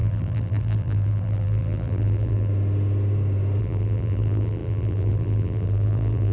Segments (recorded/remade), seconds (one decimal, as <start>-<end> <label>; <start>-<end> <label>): 0.0-2.5 remade; 2.5-3.6 recorded; 3.6-6.3 remade